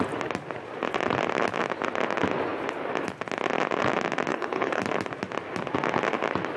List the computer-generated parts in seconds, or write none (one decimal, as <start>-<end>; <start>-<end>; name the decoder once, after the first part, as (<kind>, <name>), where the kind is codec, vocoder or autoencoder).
4.3-4.8 (codec, HILCodec)

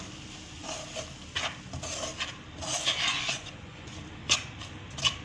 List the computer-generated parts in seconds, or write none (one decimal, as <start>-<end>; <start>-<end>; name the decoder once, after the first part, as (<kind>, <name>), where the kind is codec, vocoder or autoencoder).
3.1-4.0 (vocoder, Vocos)

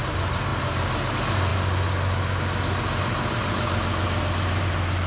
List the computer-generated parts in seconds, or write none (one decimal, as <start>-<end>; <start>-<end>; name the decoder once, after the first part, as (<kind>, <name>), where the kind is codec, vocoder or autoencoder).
none

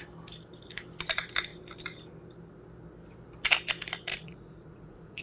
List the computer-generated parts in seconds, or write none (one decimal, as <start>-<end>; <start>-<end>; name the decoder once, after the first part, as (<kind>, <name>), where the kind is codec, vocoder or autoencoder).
4.1-5.2 (vocoder, Vocos)

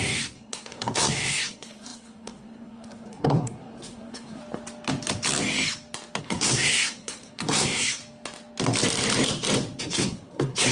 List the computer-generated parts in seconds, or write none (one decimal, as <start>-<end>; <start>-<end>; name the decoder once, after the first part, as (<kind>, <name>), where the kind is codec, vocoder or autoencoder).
0.0-4.4 (codec, SNAC); 6.2-8.0; 9.8-10.7